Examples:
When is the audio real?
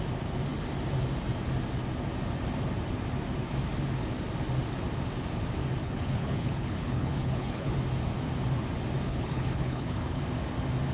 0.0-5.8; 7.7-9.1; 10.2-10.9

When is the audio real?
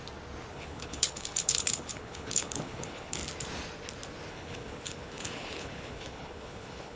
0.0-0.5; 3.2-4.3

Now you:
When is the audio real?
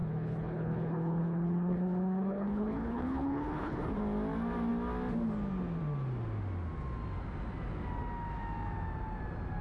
3.8-9.6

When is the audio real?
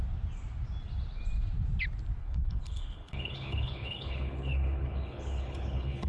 0.0-2.2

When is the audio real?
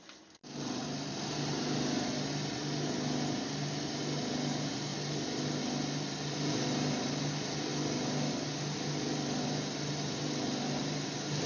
0.0-11.5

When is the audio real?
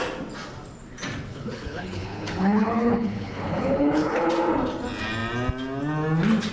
0.0-1.3; 4.3-6.5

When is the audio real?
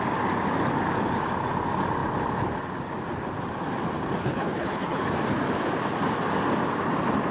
0.0-4.2; 5.0-7.3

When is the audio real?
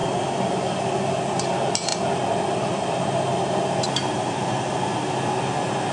0.0-5.9